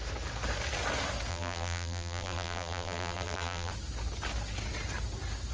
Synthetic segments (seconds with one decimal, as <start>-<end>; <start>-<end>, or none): 1.3-3.7

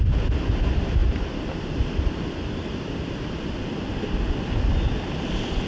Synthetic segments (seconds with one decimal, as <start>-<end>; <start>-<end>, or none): 1.0-4.4

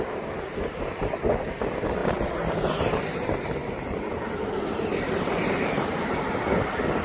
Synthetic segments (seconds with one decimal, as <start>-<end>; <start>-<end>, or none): 2.0-6.2

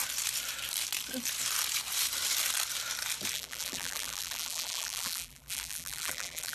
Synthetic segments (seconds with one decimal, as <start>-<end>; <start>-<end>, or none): 3.3-6.5

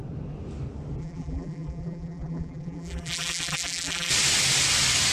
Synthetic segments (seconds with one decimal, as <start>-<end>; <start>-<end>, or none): 1.0-4.1

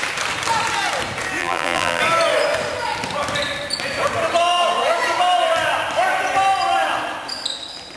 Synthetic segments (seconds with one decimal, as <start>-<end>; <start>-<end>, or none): 1.4-2.0

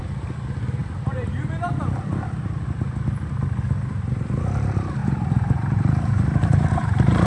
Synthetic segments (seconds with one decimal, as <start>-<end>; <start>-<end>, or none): 5.0-7.3

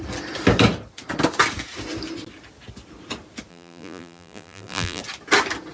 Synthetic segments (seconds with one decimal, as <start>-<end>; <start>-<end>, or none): 3.5-5.0